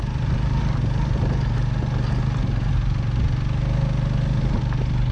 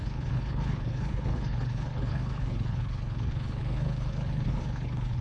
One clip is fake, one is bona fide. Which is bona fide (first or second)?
first